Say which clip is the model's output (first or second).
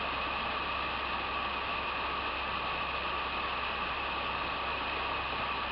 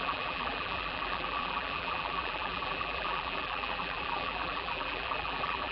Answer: second